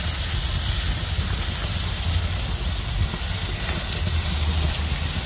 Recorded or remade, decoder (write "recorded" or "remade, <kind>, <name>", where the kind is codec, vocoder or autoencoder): recorded